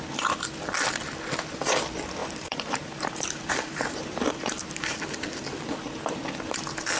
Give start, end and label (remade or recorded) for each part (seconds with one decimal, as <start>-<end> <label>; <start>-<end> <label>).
0.0-2.2 recorded; 2.2-5.0 remade; 5.0-7.0 recorded